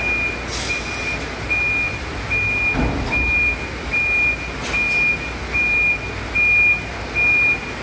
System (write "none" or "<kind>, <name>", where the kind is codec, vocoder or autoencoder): none